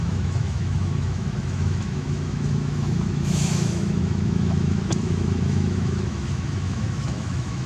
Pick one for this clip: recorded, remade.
remade